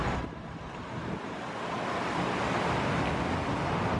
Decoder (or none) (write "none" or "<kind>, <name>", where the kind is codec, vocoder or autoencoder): none